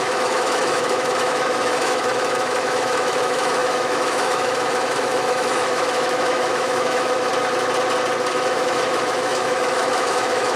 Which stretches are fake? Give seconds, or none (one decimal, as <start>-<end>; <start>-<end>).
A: 0.0-7.3; 8.3-10.6